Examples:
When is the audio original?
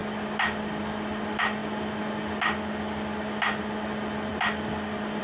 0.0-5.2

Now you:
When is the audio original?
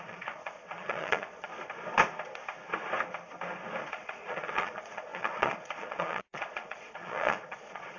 1.5-3.8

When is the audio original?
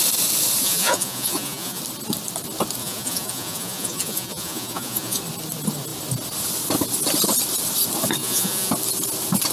0.0-0.6; 1.8-2.8; 5.2-8.2; 8.7-9.5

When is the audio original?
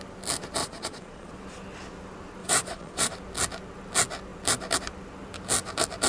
0.0-0.6; 1.3-2.4; 3.1-6.1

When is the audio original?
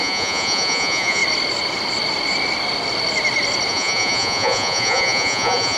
1.2-3.7